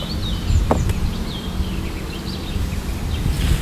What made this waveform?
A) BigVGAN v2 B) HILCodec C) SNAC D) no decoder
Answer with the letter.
D